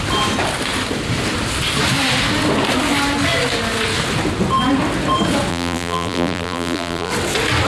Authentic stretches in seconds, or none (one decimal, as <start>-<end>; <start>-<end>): 0.0-5.5; 7.1-7.7